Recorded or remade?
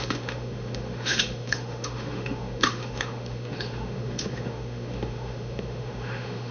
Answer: remade